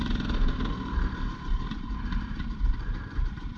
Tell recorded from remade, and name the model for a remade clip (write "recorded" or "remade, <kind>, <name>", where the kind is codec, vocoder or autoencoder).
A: remade, vocoder, BigVGAN v2